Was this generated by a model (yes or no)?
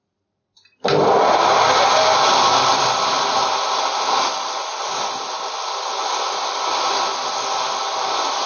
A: no